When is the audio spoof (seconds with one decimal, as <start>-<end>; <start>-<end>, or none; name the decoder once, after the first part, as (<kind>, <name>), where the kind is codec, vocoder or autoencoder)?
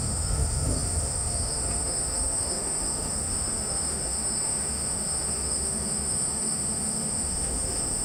0.0-8.0 (autoencoder, DAC-VAE)